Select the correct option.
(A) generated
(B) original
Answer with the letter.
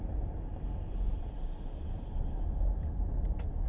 B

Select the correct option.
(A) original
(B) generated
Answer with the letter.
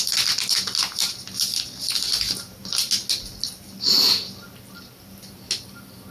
A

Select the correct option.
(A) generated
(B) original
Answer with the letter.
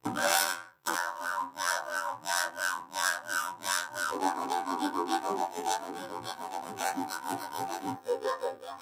A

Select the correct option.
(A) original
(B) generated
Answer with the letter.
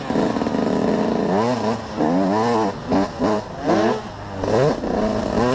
A